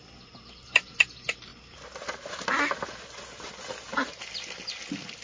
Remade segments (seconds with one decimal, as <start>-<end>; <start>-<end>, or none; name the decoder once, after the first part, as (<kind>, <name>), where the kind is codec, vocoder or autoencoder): none